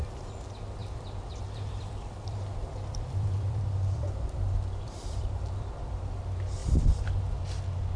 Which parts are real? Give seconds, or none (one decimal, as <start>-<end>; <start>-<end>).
0.0-0.8; 5.6-6.6; 7.2-8.0